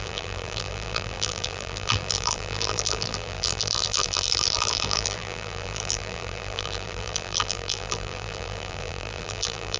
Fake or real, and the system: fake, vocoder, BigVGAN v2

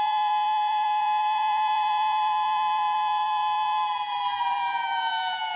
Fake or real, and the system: fake, vocoder, BigVGAN v2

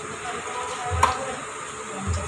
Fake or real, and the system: real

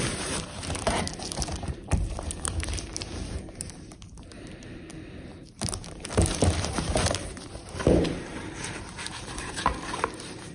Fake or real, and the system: fake, vocoder, BigVGAN v2